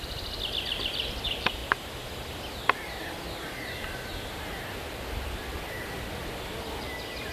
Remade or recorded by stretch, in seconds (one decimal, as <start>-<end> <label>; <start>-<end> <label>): 0.0-7.3 recorded